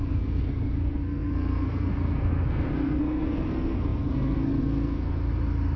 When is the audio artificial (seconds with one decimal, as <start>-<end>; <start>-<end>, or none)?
0.0-5.3